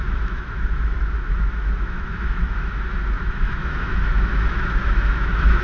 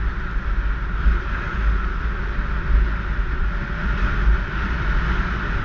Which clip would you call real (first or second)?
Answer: second